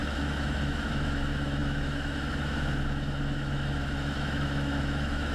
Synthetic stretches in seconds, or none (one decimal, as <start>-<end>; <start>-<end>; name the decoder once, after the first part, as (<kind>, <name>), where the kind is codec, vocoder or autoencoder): 0.0-5.3 (autoencoder, DAC-VAE)